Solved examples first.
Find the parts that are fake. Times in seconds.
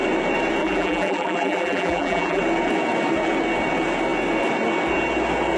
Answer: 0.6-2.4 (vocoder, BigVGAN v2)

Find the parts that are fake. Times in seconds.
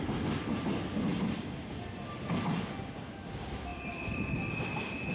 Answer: 1.1-2.3 (vocoder, BigVGAN v2); 3.7-4.3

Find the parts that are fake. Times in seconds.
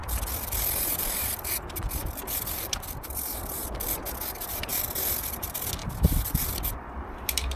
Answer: 1.0-7.6 (vocoder, BigVGAN v2)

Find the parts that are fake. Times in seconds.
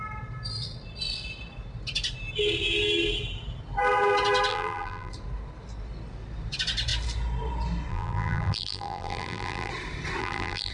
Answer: 4.5-5.1 (vocoder, BigVGAN v2); 7.9-9.7; 10.2-10.7